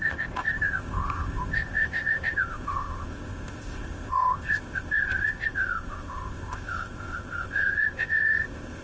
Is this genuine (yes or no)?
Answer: no